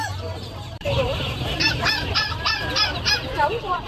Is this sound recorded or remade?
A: remade